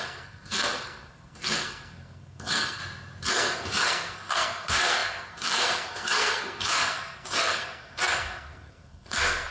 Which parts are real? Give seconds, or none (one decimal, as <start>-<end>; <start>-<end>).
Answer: 2.8-3.3